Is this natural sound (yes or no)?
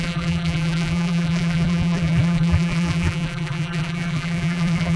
no